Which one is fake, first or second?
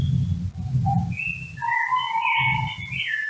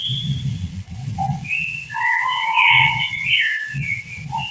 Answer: second